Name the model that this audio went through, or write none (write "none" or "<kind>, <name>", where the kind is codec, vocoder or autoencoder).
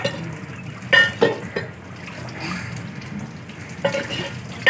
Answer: none